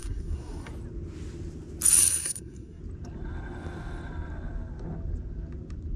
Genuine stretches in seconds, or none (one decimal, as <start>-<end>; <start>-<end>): 0.7-2.1; 2.8-6.0